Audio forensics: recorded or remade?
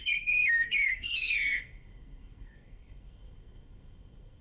remade